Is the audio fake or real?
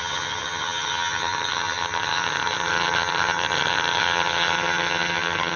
fake